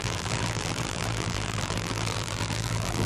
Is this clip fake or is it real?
fake